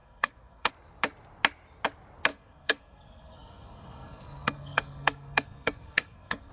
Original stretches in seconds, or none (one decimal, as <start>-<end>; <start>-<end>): 0.7-2.3